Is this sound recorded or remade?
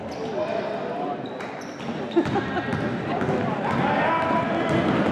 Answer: recorded